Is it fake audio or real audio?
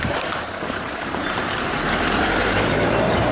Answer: fake